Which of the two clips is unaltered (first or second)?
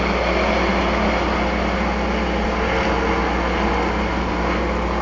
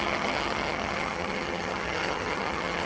first